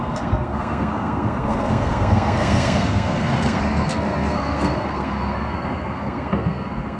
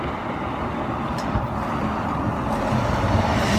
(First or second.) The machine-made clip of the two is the first